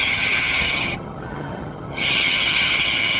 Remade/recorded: remade